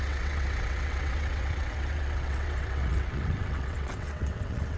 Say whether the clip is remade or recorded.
remade